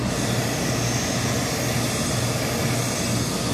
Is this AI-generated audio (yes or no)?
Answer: no